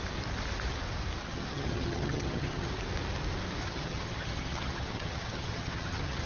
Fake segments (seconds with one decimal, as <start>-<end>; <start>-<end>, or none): 1.2-2.7; 3.6-6.3